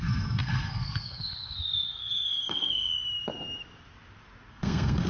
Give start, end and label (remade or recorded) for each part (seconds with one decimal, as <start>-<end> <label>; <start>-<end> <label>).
0.0-2.9 remade; 2.9-4.5 recorded; 4.5-5.1 remade